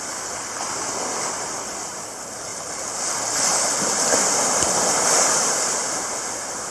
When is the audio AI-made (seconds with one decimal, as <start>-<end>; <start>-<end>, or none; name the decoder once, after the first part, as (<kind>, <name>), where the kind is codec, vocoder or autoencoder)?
none